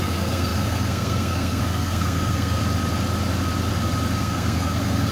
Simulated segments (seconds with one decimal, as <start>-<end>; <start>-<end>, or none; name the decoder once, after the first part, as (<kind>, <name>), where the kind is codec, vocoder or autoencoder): 0.0-2.6 (codec, SNAC); 4.2-5.1